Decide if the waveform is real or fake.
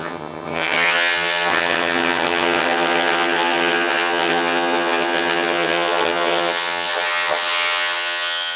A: fake